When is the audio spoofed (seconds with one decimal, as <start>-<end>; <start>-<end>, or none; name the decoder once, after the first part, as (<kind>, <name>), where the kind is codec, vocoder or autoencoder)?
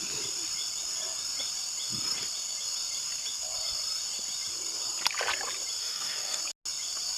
5.8-6.4 (codec, DAC)